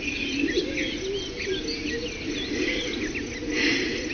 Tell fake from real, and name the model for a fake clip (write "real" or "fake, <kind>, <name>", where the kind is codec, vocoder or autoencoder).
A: real